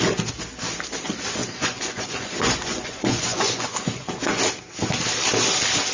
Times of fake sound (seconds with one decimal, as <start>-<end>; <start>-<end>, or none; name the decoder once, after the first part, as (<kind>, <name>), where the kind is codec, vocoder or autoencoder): 1.4-4.4 (vocoder, Vocos)